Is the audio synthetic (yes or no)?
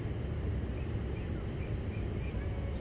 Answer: no